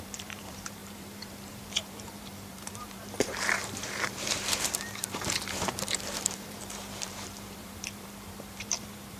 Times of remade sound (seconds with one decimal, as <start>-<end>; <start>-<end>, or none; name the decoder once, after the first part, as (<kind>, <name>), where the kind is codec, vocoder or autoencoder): 0.0-9.2 (vocoder, BigVGAN v2)